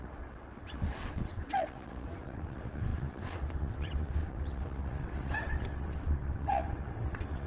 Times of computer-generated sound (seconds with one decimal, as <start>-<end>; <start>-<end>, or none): 0.0-7.5